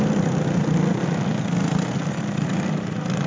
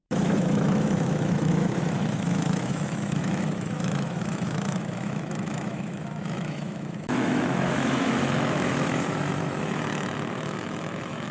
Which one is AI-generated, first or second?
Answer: second